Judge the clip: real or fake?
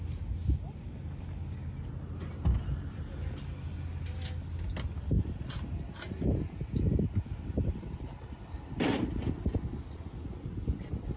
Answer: real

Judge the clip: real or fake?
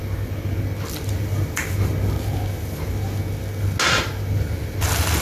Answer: real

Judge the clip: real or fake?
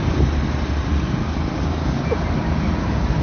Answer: real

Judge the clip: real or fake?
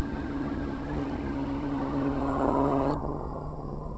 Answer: fake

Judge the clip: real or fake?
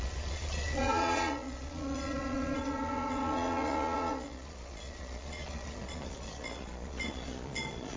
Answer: fake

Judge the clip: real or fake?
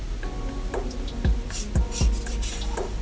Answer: real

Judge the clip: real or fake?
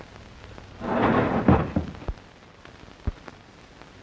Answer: real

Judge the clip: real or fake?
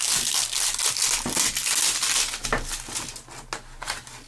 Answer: real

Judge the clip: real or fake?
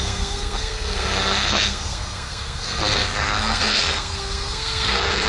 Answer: fake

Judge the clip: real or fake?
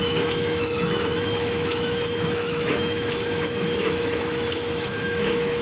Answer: fake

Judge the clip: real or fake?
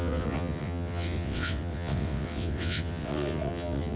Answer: fake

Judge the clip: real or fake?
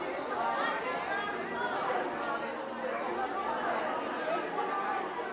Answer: real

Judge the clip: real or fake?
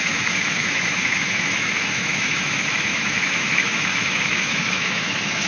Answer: fake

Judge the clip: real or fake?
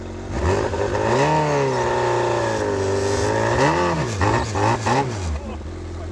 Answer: real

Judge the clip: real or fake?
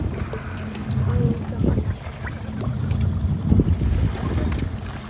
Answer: real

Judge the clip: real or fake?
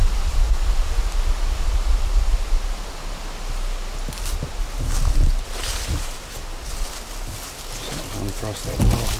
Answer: real